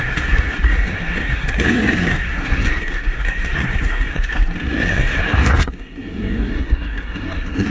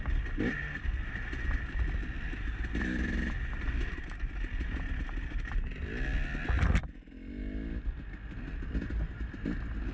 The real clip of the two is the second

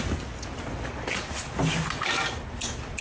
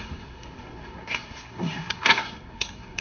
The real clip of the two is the first